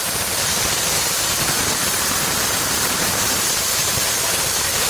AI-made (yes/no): yes